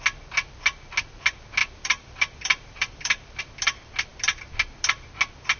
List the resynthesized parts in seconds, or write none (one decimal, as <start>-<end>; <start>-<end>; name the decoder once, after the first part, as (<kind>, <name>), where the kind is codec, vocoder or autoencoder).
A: 1.6-3.4 (vocoder, BigVGAN v2)